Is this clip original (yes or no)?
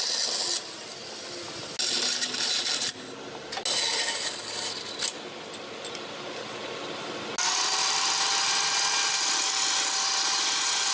yes